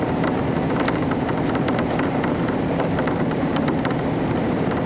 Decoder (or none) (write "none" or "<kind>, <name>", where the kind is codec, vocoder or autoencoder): vocoder, BigVGAN v2